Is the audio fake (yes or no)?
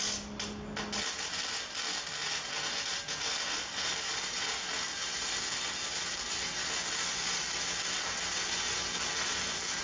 no